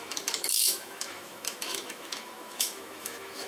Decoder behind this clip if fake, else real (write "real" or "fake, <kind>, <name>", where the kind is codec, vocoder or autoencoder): fake, autoencoder, DAC-VAE